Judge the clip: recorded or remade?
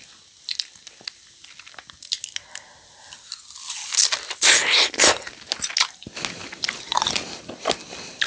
recorded